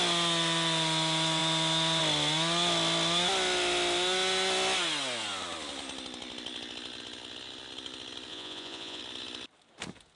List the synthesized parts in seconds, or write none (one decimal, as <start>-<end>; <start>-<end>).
8.3-9.0

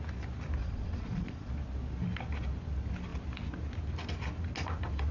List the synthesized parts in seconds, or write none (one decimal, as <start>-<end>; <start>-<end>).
0.6-1.5

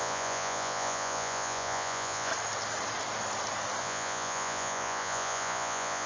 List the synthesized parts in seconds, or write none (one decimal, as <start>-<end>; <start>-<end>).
0.0-2.3; 3.8-6.1